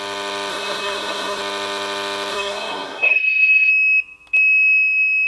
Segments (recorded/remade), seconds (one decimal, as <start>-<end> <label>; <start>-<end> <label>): 0.0-0.5 recorded; 0.5-1.4 remade; 1.4-2.3 recorded; 2.3-3.7 remade; 3.7-5.3 recorded